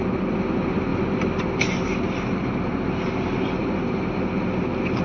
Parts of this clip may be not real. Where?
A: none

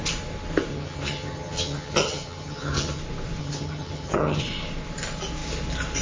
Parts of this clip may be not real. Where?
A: 0.7-3.0; 3.4-4.4

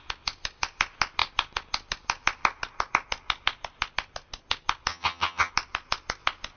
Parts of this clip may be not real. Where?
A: 4.9-5.5

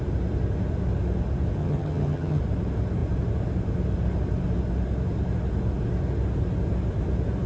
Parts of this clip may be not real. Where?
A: 1.6-2.4

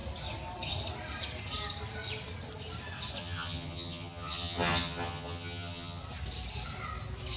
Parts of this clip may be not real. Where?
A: 3.2-6.0

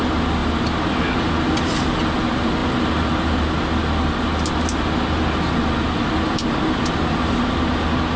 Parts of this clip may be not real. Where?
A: none

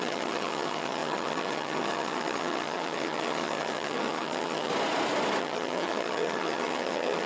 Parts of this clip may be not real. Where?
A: 0.0-4.7; 5.4-7.3

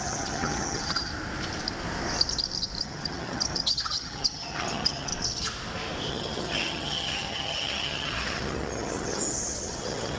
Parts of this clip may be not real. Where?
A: 0.0-1.1; 2.8-5.1; 6.1-10.2